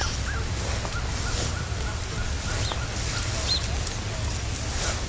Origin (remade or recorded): recorded